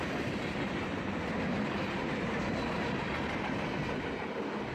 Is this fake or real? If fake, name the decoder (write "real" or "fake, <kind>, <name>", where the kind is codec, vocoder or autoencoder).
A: real